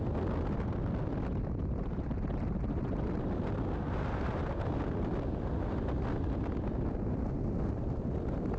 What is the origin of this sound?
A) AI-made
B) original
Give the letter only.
B